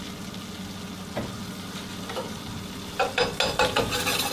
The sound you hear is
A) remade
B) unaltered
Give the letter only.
B